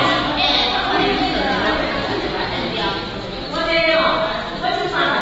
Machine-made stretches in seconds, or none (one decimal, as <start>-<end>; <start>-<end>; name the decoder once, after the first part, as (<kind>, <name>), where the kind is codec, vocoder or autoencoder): none